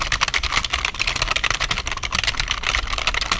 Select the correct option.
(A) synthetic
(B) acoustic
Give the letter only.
B